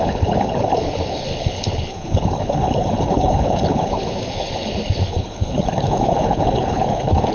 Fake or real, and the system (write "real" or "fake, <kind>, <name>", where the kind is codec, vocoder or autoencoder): fake, codec, HILCodec